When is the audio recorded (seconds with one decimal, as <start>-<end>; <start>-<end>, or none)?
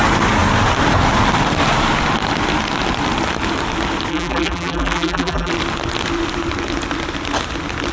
0.0-4.1; 5.5-7.9